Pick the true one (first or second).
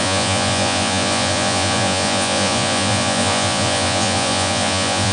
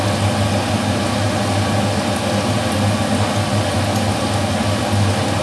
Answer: second